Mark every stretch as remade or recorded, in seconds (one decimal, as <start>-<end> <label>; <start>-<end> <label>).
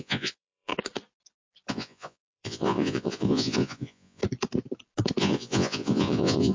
0.0-0.7 remade; 0.7-1.7 recorded; 1.7-4.2 remade; 4.2-5.2 recorded; 5.2-6.5 remade